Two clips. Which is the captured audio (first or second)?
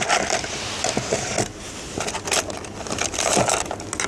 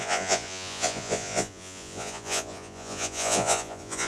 first